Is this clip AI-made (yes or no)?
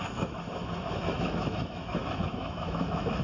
yes